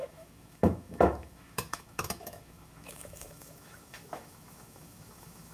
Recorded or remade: remade